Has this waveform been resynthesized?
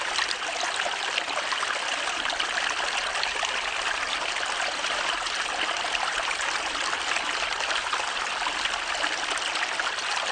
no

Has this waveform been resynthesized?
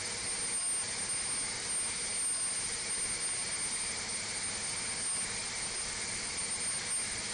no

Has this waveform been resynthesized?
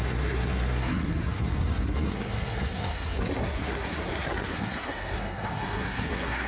yes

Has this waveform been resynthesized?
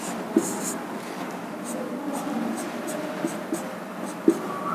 no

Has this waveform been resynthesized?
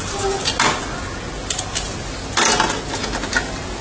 no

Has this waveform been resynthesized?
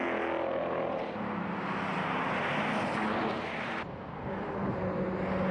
no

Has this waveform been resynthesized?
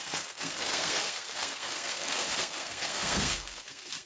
yes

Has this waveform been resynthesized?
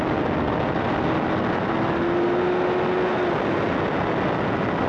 no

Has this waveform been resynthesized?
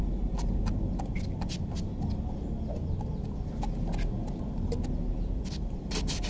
no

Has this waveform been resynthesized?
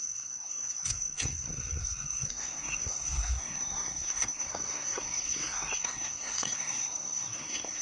yes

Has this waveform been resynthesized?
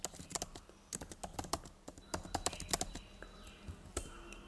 no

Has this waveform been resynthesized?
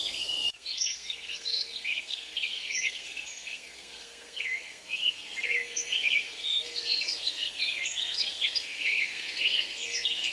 yes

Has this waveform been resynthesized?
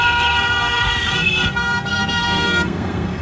yes